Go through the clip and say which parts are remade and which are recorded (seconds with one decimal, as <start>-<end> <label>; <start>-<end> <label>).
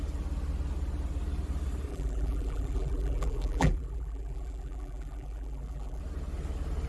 0.0-1.9 recorded; 1.9-6.0 remade; 6.0-6.9 recorded